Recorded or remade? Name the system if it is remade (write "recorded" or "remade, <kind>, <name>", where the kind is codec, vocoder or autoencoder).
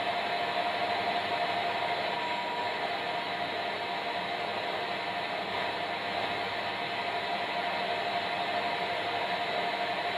recorded